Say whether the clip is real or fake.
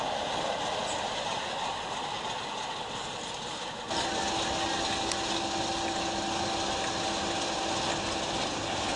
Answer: real